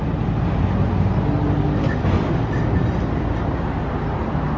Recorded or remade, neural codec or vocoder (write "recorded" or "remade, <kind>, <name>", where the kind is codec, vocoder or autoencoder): recorded